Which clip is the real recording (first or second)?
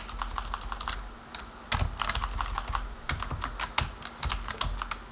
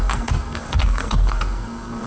first